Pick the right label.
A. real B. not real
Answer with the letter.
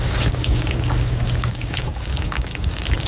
B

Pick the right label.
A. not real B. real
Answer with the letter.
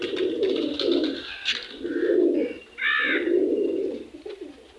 B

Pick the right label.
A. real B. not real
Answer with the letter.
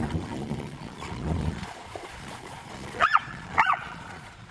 B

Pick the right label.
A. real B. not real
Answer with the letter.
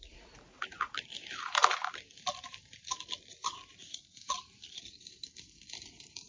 A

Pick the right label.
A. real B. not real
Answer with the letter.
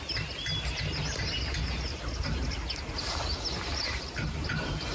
A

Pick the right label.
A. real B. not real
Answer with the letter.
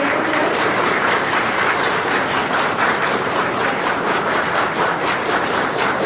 B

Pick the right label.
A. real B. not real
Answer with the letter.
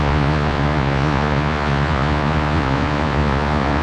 B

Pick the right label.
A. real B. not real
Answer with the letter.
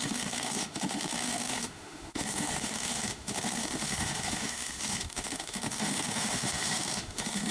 B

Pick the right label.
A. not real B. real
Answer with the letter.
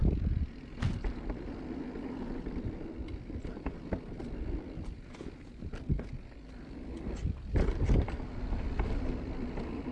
B